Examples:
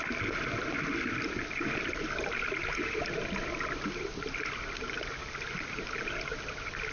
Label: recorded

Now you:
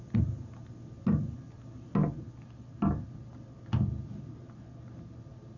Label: recorded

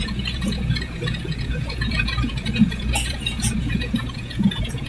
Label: remade